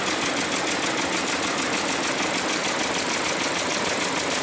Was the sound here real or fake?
real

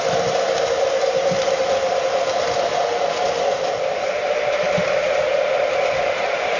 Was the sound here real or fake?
real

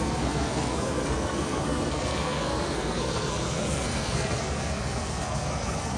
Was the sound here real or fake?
fake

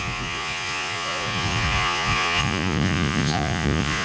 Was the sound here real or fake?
fake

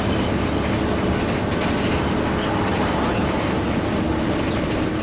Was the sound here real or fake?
real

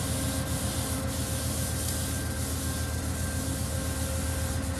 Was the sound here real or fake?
real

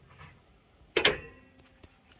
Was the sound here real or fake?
real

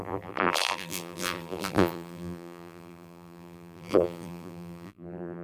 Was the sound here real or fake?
fake